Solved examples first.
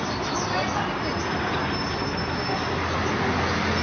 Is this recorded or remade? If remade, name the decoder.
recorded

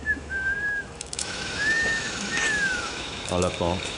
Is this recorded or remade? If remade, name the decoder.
remade, autoencoder, DAC-VAE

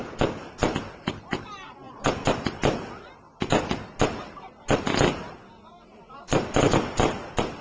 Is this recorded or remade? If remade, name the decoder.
recorded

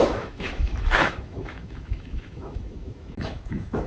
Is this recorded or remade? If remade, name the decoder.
remade, autoencoder, DAC-VAE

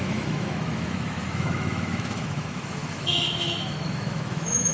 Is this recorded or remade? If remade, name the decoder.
remade, autoencoder, DAC-VAE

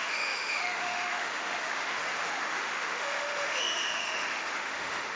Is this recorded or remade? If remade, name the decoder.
remade, autoencoder, DAC-VAE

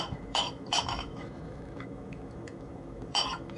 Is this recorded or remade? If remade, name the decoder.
remade, autoencoder, DAC-VAE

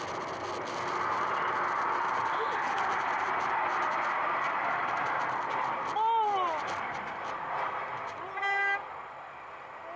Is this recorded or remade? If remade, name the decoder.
recorded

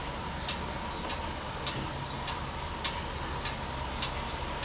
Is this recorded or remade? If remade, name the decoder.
recorded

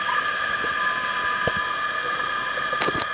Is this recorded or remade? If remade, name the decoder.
recorded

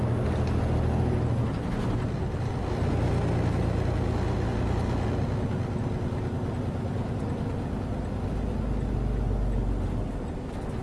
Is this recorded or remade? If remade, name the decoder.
recorded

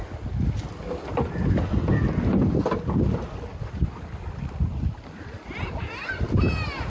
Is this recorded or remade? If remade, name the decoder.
recorded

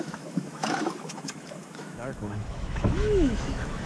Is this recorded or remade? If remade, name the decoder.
remade, autoencoder, DAC-VAE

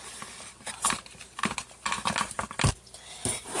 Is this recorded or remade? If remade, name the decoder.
recorded